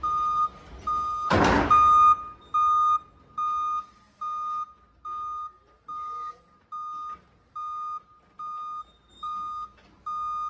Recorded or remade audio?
recorded